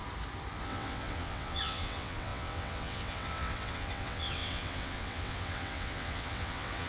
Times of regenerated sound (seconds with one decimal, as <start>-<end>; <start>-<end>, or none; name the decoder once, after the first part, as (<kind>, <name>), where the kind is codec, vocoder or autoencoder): 0.6-6.9 (vocoder, WaveNeXt)